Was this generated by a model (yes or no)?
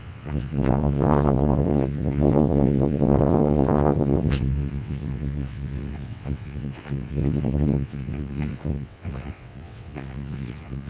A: yes